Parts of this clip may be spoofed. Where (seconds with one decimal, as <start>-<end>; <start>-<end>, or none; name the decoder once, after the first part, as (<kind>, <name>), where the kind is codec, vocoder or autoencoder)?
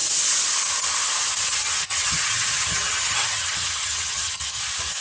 1.6-4.6 (vocoder, HiFi-GAN)